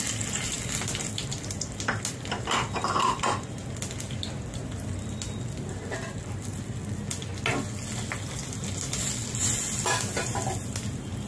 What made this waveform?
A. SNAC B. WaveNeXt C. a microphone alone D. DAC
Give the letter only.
C